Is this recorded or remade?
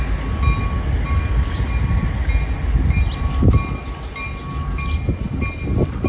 recorded